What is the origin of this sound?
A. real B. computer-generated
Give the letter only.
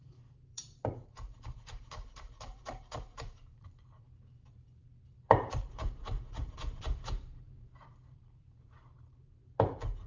B